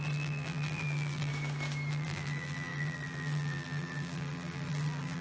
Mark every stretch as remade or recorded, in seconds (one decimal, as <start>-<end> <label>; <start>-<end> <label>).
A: 0.0-1.3 remade; 1.3-1.9 recorded; 1.9-5.2 remade